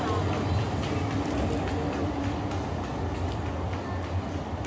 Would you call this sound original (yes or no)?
yes